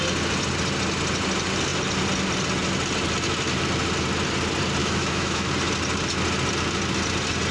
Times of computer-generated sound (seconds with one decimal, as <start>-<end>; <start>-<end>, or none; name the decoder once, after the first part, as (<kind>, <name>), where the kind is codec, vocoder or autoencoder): 4.8-5.5 (autoencoder, DAC-VAE)